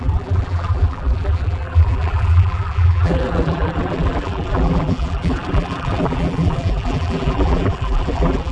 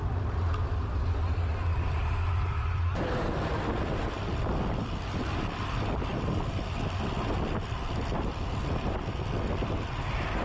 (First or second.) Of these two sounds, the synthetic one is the first